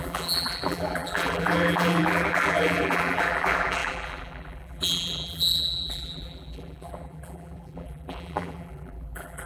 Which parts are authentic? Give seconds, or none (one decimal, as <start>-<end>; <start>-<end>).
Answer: none